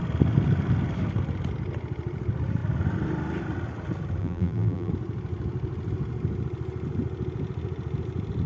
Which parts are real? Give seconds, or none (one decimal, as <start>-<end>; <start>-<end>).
0.0-4.2; 4.9-8.5